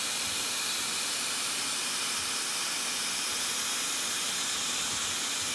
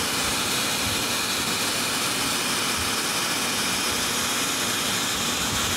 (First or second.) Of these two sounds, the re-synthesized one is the first